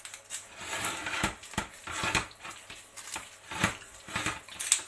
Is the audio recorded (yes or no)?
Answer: yes